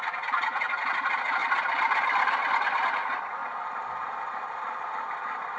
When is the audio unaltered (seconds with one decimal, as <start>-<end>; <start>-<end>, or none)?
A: 1.4-3.0; 3.4-5.6